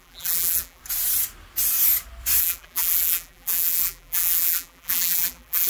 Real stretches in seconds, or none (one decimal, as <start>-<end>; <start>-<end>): 0.8-2.4